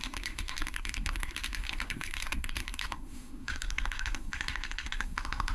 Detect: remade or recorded remade